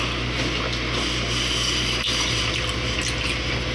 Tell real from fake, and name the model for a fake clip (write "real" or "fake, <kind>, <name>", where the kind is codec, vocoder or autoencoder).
real